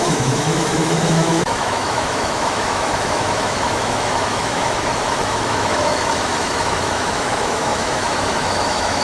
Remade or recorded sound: remade